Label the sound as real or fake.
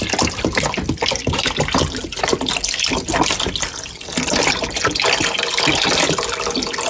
real